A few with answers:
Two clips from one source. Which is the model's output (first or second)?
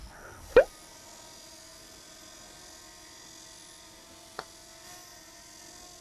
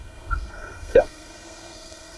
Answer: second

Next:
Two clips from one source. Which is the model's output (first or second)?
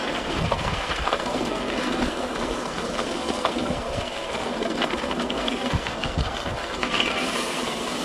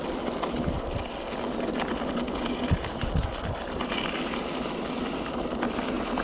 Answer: first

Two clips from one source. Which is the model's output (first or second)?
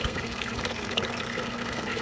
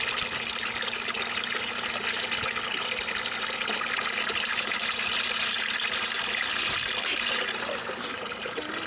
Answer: first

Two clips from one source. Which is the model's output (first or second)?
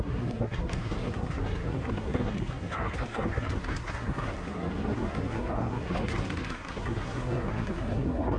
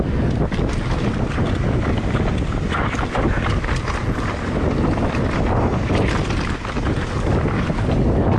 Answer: first